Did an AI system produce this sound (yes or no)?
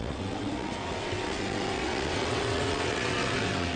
yes